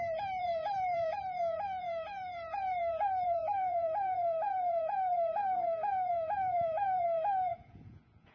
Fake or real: fake